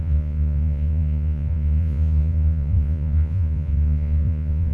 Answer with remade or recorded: remade